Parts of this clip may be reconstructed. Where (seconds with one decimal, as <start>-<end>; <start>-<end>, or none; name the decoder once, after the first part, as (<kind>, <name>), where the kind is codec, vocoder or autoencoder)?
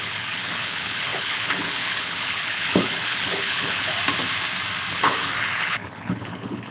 0.0-3.9 (codec, HILCodec); 4.9-6.7